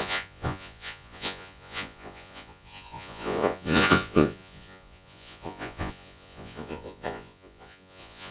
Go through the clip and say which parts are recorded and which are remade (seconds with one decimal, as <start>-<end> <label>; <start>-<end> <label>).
0.0-8.3 remade